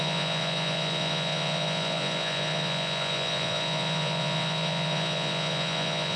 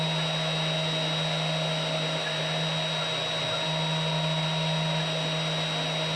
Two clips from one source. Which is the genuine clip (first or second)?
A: second